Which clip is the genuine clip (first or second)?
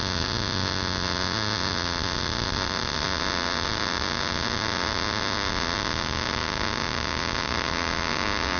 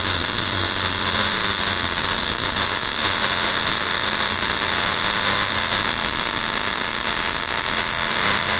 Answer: first